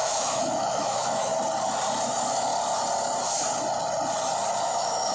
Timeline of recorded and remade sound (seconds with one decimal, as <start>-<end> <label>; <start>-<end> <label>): 0.0-1.3 remade; 1.3-2.1 recorded; 2.1-2.5 remade; 2.5-4.6 recorded; 4.6-5.1 remade